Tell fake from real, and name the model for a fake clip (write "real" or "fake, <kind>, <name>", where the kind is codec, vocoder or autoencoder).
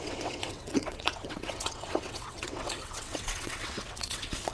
fake, vocoder, WaveNeXt